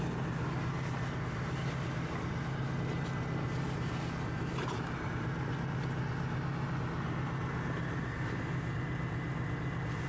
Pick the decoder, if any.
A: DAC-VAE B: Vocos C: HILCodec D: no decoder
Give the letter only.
D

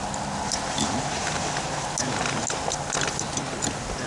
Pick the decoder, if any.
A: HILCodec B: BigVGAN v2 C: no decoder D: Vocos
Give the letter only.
C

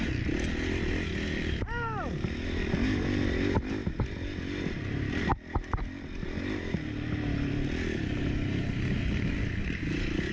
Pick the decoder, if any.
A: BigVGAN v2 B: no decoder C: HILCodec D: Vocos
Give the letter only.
B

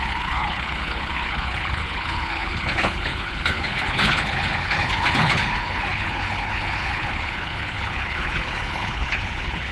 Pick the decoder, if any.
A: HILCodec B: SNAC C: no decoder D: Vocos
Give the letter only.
A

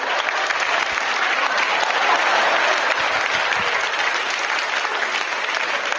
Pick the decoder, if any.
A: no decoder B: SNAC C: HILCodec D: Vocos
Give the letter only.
A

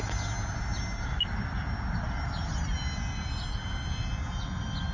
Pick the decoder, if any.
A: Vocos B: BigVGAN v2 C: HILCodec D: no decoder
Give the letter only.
D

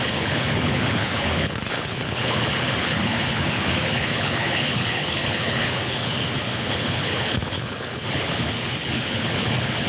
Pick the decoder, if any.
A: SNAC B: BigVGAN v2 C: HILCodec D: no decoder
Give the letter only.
C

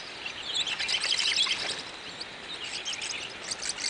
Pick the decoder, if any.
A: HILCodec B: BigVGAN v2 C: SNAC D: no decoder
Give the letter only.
D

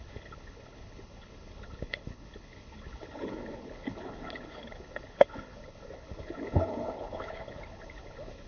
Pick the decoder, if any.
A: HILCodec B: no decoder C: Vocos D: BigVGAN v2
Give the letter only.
A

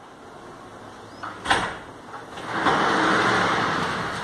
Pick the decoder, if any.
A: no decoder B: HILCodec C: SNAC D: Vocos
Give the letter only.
A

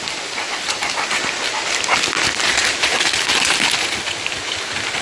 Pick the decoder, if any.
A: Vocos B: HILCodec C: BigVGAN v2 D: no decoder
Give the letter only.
D